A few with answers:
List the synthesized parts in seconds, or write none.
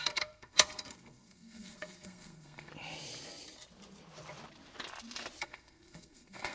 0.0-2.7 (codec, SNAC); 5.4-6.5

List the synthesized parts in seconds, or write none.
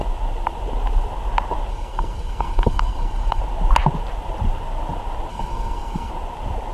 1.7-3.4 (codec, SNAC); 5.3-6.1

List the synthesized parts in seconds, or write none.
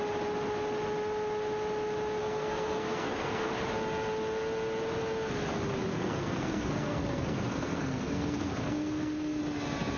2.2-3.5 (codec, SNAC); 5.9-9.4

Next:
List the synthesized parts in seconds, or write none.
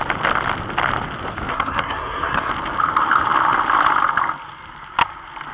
1.5-2.5 (codec, SNAC)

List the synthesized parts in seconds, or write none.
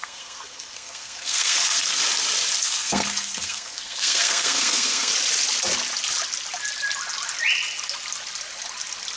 0.0-2.0 (codec, SNAC); 2.6-5.1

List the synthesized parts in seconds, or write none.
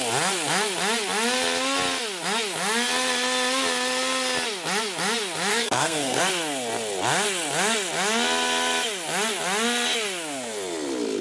5.5-6.2 (codec, SNAC)